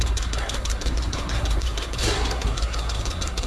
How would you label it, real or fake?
fake